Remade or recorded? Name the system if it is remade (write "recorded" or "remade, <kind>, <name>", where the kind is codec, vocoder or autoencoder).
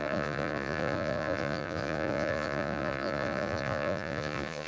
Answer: remade, vocoder, Vocos